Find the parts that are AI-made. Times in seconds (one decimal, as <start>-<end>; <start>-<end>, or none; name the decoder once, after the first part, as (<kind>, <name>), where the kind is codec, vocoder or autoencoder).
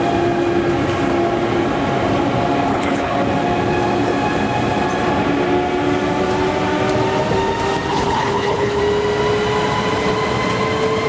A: 2.7-3.2 (codec, HILCodec); 7.9-8.8